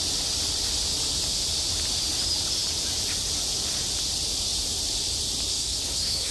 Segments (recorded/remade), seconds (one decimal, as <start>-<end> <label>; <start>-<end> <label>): 0.0-5.5 recorded; 5.5-6.3 remade